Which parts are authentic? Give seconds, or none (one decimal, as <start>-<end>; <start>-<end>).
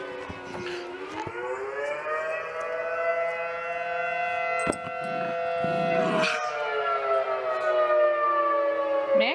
0.0-9.3